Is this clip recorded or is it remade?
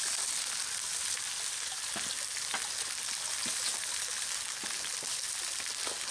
recorded